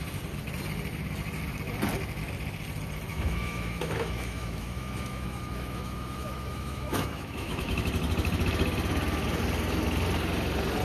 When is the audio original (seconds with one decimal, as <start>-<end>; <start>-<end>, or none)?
0.0-3.1; 7.8-10.8